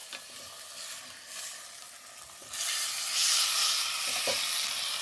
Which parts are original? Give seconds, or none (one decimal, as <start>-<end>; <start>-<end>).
0.0-5.0